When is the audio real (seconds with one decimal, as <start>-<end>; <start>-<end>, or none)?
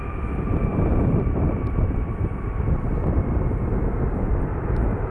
0.0-0.7; 3.8-5.1